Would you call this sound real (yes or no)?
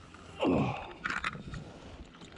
yes